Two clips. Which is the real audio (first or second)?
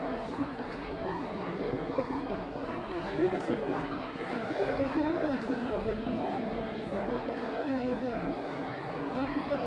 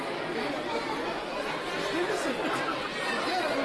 second